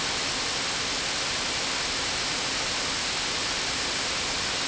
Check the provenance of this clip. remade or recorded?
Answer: recorded